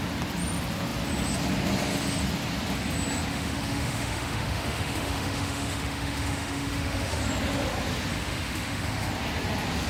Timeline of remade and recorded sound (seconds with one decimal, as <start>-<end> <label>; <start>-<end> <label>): 0.0-3.3 recorded; 3.3-7.2 remade; 7.2-8.1 recorded; 8.1-9.1 remade; 9.1-9.9 recorded